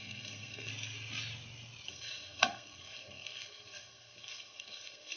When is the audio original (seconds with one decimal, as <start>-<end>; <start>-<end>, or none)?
0.7-1.9